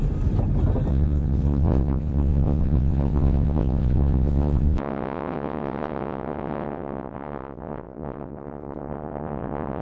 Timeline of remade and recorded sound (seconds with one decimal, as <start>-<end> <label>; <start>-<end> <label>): 0.0-0.9 recorded; 0.9-9.8 remade